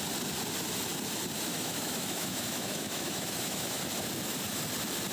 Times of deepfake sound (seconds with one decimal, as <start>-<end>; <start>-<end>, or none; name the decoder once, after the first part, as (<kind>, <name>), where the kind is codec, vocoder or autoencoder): 1.5-3.8 (autoencoder, DAC-VAE)